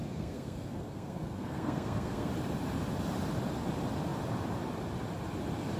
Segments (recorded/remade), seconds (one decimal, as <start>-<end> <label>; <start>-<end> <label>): 0.0-2.3 remade; 2.3-5.8 recorded